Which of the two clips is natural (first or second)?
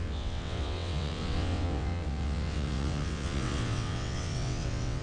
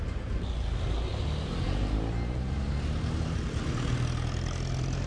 second